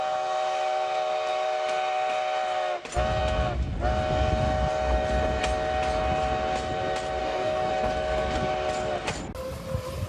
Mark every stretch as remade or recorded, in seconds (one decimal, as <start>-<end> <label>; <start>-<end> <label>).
0.0-7.2 recorded; 7.2-7.7 remade; 7.7-10.1 recorded